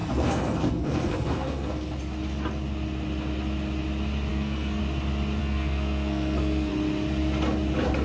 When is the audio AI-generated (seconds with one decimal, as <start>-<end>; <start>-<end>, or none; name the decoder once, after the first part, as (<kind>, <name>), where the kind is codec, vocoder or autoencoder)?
0.0-2.0 (codec, SNAC); 4.3-4.8; 5.4-6.7